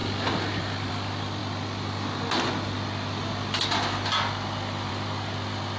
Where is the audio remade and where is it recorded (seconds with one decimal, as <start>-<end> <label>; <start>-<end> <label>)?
0.0-5.8 recorded